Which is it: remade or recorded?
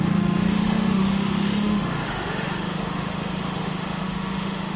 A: remade